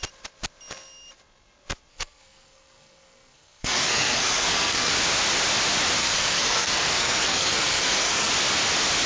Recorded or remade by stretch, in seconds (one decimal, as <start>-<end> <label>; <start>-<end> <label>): 0.0-1.9 recorded; 1.9-4.9 remade; 4.9-6.0 recorded; 6.0-8.3 remade; 8.3-9.1 recorded